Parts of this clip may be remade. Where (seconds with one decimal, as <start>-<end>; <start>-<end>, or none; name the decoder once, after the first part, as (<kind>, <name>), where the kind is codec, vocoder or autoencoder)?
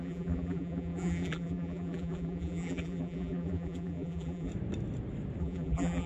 0.0-4.5 (vocoder, BigVGAN v2); 5.4-6.1